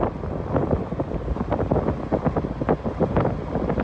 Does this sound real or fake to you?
real